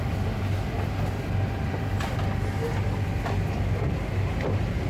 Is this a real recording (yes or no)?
yes